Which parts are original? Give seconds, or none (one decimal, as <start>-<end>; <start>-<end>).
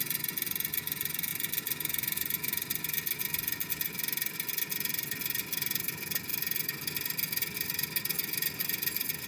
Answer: 0.0-9.3